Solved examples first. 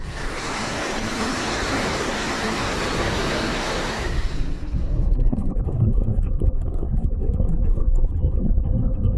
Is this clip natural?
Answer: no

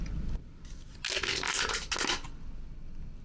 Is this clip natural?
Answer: yes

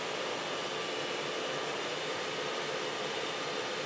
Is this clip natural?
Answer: yes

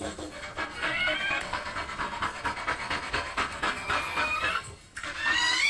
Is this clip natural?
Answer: no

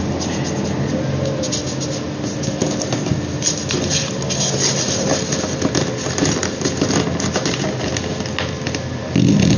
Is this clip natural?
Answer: yes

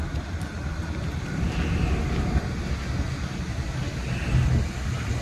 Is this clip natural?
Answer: yes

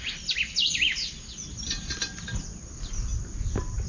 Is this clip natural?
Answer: yes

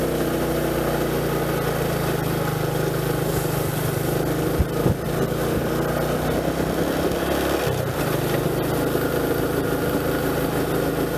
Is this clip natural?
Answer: yes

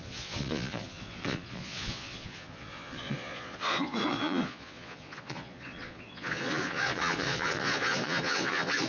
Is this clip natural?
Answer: no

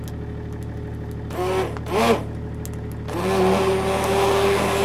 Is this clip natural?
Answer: yes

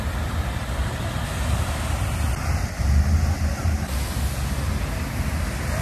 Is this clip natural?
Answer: yes